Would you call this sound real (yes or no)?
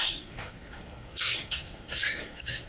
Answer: no